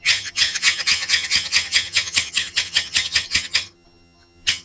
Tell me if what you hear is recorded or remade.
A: remade